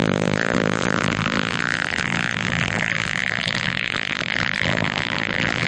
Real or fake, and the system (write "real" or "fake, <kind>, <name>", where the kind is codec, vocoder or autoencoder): fake, vocoder, BigVGAN v2